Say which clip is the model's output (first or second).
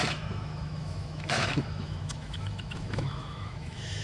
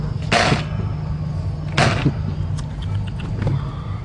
first